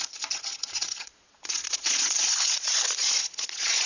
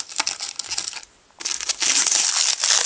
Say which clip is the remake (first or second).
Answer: first